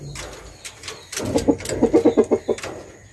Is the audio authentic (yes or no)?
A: yes